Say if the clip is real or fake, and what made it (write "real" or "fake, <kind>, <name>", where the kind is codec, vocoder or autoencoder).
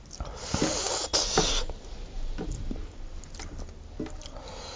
real